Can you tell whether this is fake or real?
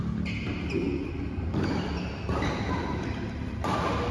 real